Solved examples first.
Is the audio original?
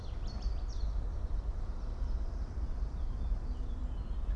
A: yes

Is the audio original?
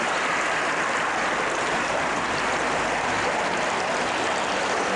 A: yes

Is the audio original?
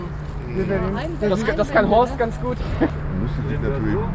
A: yes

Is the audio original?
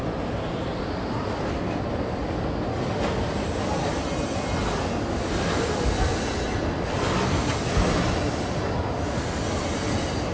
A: yes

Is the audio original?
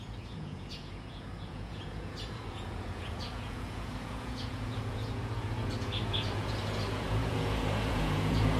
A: no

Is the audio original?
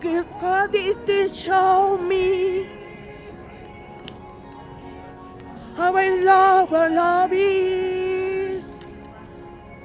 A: yes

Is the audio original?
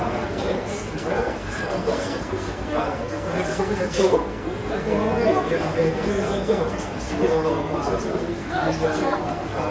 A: no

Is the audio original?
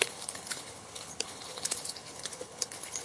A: no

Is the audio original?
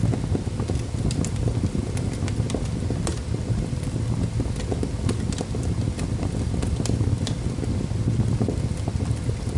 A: yes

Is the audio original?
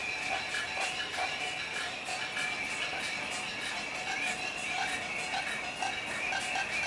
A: yes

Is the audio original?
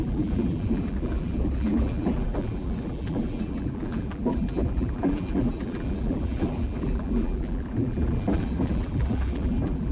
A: no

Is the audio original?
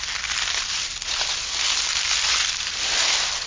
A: yes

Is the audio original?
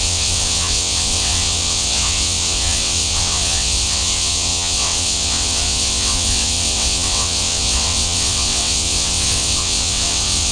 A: no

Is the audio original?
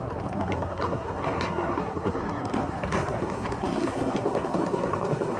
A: no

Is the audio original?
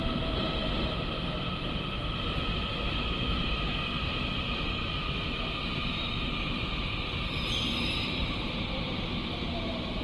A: no